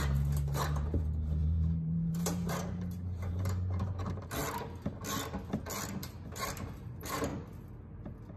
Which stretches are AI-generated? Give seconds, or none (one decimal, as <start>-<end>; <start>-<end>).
0.0-4.4; 6.3-7.3